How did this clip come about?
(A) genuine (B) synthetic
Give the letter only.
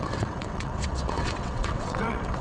B